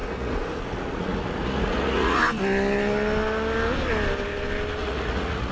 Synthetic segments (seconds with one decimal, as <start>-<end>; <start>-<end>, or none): 0.0-2.2; 4.8-5.5